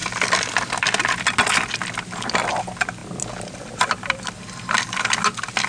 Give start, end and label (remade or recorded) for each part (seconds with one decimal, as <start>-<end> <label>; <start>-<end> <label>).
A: 0.0-5.7 recorded